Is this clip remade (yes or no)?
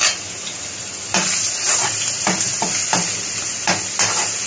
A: no